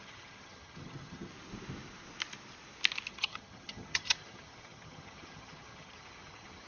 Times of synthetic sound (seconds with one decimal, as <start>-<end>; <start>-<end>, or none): 0.0-1.3; 3.1-6.7